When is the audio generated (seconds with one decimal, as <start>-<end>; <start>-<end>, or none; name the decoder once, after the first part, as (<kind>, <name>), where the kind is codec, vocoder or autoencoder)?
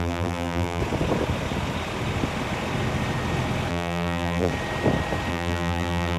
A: 0.0-0.8 (vocoder, BigVGAN v2); 3.7-4.5; 5.3-6.2